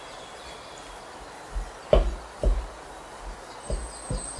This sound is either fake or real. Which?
real